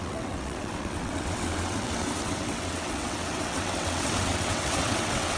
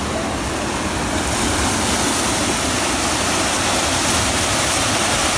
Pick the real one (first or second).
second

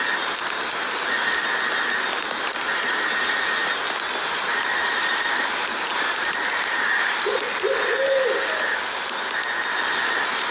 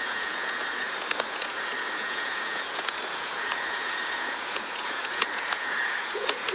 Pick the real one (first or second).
first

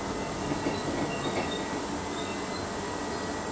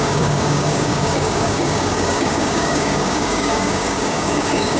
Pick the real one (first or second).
first